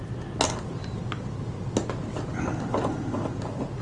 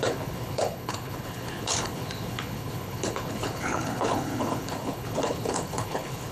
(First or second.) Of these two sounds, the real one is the first